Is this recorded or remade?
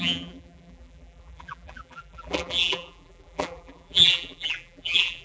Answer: remade